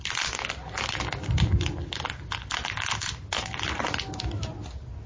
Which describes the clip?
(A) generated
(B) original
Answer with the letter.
B